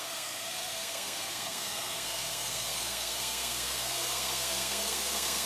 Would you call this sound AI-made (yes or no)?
yes